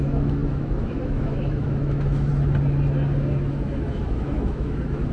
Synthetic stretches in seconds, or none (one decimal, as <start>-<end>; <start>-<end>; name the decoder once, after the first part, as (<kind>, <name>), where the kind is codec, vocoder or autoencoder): 0.0-2.3 (autoencoder, DAC-VAE); 3.4-5.1

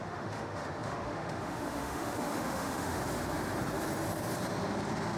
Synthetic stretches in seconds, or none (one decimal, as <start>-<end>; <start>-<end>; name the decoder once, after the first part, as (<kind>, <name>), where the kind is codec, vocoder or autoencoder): 0.0-3.0 (autoencoder, DAC-VAE)

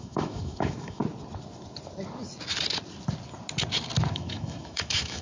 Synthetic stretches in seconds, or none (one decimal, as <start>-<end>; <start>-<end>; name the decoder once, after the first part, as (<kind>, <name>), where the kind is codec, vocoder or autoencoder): 0.0-1.0 (autoencoder, DAC-VAE); 4.1-5.2

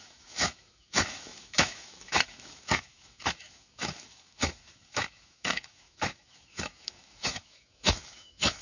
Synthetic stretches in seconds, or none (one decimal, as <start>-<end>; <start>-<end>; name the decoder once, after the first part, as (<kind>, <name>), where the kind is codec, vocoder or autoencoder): 0.0-8.6 (autoencoder, DAC-VAE)